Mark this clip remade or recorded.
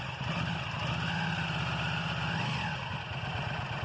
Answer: recorded